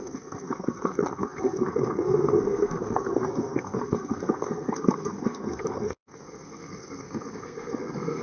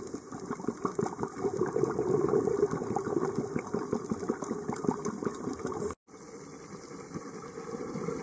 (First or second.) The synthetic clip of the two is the first